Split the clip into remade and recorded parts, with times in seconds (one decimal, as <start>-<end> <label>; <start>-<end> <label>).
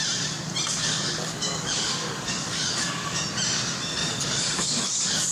0.0-0.8 recorded; 0.8-3.2 remade; 3.2-4.0 recorded; 4.0-5.3 remade